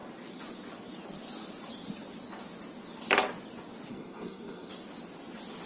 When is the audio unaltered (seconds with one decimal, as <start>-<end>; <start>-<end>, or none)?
0.0-3.9; 4.7-5.7